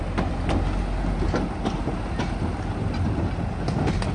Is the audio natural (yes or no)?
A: yes